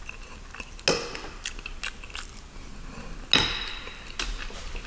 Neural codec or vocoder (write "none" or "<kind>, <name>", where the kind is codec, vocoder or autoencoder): none